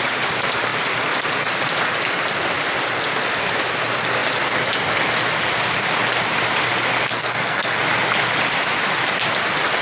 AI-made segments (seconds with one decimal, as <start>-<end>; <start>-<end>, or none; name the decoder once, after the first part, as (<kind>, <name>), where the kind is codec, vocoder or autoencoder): 7.1-7.8 (codec, SNAC)